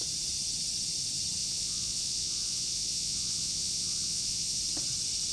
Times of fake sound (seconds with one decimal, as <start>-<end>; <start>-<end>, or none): 1.4-4.6